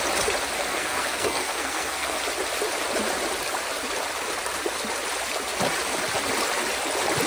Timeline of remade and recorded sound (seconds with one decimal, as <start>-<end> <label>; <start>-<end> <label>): 0.0-0.6 recorded; 0.6-2.2 remade; 2.2-7.3 recorded